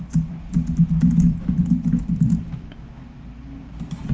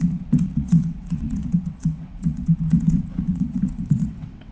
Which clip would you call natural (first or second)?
first